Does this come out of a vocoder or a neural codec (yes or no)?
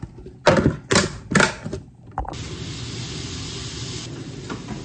no